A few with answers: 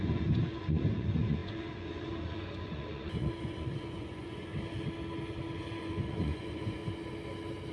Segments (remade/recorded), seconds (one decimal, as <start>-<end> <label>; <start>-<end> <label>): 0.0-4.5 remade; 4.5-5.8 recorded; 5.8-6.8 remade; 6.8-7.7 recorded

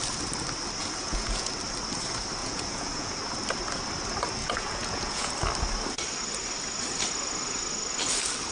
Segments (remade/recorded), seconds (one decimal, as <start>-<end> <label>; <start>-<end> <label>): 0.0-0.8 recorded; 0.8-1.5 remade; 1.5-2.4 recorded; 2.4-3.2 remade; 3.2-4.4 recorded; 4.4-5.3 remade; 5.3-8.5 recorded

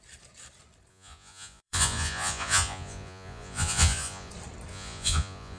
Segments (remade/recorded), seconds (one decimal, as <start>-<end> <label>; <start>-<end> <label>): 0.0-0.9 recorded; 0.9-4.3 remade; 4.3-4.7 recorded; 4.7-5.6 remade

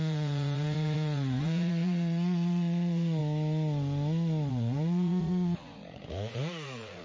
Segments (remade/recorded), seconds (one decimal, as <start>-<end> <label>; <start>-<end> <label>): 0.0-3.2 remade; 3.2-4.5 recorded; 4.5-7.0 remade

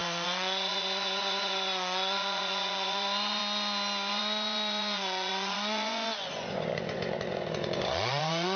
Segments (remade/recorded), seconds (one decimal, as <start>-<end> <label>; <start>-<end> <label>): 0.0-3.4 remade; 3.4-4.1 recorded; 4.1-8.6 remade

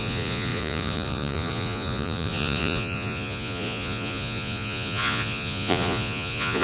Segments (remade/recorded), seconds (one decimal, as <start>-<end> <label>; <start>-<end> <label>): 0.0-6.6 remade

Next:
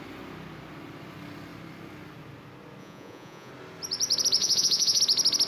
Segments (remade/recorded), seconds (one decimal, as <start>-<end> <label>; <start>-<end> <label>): 0.0-2.8 recorded; 2.8-3.5 remade; 3.5-4.4 recorded; 4.4-5.0 remade; 5.0-5.5 recorded

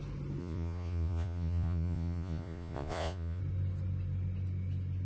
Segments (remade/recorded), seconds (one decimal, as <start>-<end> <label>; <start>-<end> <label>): 0.0-0.4 recorded; 0.4-3.4 remade; 3.4-5.0 recorded